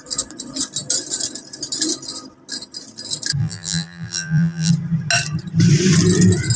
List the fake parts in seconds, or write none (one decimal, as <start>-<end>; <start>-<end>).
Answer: 3.4-4.7